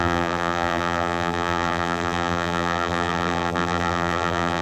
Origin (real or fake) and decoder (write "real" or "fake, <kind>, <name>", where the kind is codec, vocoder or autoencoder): fake, vocoder, BigVGAN v2